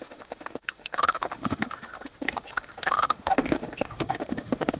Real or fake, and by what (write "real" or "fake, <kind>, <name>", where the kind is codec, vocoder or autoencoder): fake, autoencoder, DAC-VAE